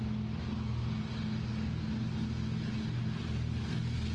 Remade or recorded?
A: recorded